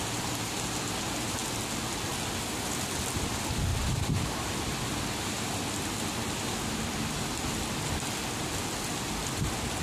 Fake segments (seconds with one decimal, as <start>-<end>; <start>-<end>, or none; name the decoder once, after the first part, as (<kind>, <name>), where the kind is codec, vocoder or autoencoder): 3.7-4.6 (vocoder, BigVGAN v2)